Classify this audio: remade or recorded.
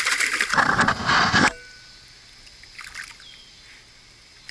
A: recorded